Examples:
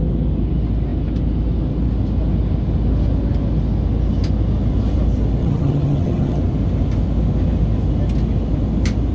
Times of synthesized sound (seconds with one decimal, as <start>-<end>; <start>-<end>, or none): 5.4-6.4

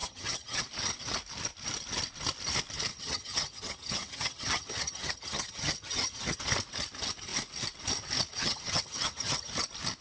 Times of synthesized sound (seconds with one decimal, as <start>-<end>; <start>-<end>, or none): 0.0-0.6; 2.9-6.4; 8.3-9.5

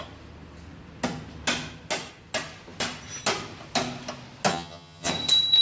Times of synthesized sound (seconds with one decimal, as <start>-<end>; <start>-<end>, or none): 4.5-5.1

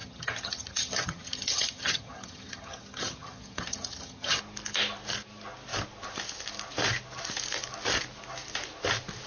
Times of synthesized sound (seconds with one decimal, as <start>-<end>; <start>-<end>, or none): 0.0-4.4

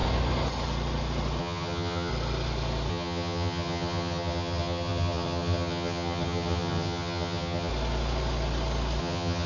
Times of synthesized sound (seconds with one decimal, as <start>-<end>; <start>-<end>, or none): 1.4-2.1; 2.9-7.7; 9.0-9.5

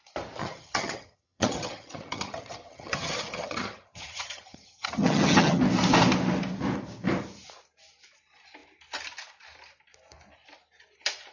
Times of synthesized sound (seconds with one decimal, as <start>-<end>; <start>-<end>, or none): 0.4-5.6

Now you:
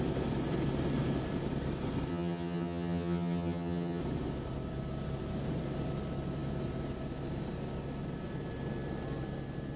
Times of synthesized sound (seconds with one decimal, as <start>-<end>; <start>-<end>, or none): 2.1-4.0

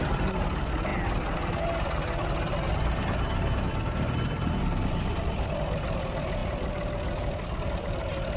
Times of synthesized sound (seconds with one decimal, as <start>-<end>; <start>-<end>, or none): none